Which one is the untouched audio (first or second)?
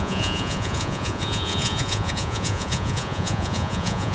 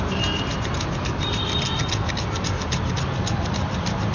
second